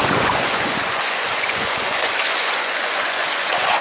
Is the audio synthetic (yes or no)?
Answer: yes